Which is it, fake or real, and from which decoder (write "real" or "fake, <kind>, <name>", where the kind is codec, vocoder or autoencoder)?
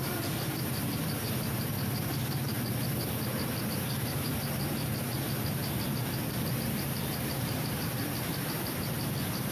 real